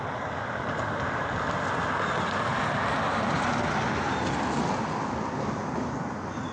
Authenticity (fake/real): real